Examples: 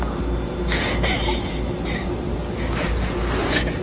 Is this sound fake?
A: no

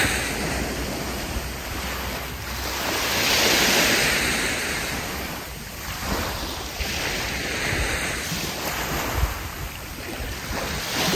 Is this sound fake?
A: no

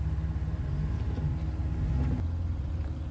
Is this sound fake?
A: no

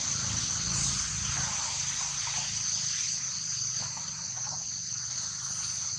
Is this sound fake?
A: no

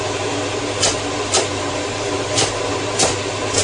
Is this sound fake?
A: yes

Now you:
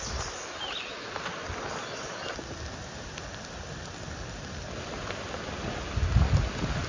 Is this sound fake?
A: no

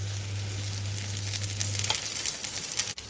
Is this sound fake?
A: no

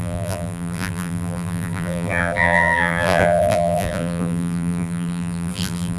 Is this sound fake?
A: yes